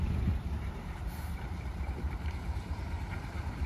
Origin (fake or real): fake